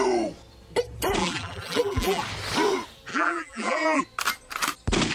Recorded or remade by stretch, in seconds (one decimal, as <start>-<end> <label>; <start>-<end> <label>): 0.0-1.2 recorded; 1.2-2.2 remade; 2.2-3.1 recorded; 3.1-4.0 remade; 4.0-5.1 recorded